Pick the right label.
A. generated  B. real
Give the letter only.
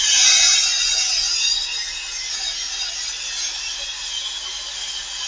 B